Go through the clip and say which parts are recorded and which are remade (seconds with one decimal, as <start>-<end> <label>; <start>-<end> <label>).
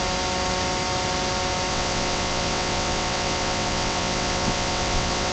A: 0.0-1.7 recorded; 1.7-5.3 remade